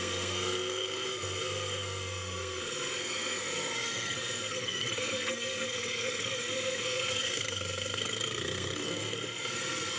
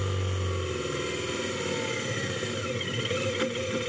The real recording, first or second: second